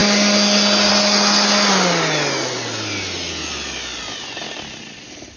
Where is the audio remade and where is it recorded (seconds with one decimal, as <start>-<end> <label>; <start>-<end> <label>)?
0.0-5.4 recorded